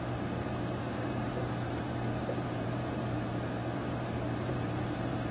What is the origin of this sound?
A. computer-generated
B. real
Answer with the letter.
A